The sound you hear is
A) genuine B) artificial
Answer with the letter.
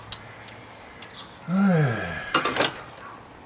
A